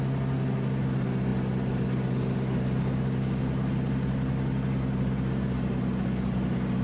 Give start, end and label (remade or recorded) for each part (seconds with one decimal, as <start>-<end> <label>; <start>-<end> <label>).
0.0-6.8 recorded